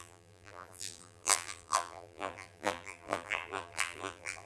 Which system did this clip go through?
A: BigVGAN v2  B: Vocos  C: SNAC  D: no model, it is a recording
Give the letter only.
A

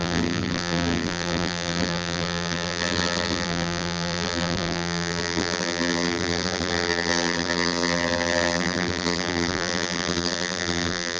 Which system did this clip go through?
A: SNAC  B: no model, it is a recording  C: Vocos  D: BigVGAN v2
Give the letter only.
D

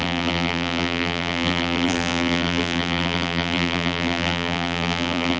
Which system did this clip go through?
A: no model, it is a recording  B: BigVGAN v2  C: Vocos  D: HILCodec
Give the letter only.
B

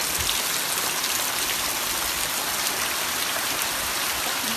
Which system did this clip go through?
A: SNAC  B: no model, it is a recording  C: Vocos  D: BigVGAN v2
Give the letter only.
B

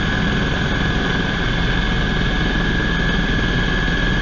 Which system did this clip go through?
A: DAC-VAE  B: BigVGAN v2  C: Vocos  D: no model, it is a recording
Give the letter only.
D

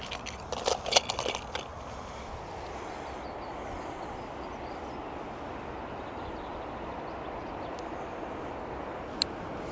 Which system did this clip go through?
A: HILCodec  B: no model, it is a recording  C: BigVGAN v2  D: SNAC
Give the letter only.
B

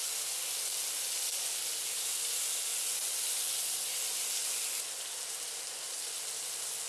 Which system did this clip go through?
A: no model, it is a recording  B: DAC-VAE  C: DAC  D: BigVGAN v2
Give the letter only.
A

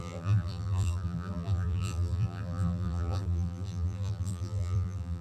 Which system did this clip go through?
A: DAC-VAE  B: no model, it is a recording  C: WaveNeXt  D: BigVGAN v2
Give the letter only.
D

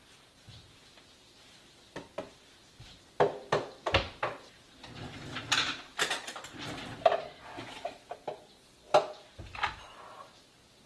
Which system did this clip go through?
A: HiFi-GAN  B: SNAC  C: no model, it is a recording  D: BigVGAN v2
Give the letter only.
C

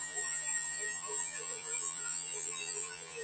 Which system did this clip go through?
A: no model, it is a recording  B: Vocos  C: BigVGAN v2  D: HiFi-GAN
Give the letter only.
C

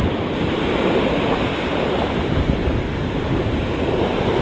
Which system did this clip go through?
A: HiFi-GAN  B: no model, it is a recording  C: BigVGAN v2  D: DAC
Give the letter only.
C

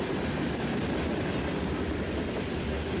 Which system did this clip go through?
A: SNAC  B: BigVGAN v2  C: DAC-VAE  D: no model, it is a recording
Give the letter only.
D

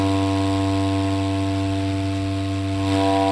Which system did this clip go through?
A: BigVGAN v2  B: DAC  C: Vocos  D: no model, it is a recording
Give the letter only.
D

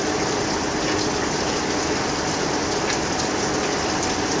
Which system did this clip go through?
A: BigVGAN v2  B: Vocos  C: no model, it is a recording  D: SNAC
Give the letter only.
C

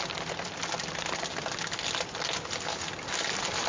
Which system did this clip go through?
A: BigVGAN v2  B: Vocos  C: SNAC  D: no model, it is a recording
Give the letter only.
D